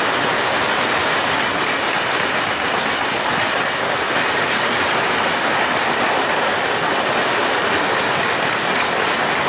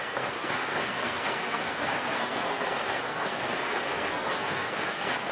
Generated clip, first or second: second